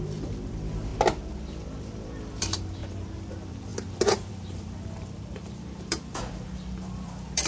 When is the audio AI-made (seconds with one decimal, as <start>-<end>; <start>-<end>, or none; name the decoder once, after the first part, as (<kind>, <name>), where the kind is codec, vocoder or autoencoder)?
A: 0.0-0.9 (vocoder, BigVGAN v2); 1.8-7.5